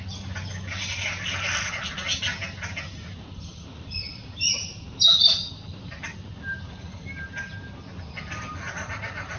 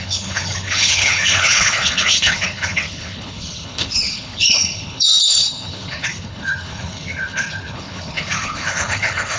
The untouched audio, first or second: first